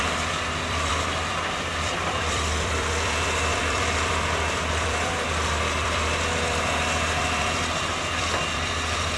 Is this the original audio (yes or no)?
no